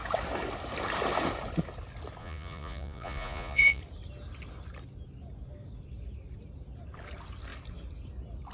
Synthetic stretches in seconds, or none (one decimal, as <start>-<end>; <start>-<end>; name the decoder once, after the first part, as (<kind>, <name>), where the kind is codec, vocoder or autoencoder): 2.2-3.8 (vocoder, Vocos)